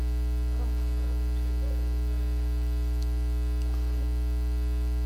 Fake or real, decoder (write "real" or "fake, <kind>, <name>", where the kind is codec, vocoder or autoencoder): real